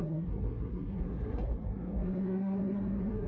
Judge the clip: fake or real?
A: fake